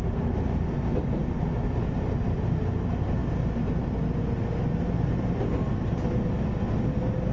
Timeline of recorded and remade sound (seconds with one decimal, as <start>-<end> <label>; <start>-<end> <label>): 0.0-7.3 recorded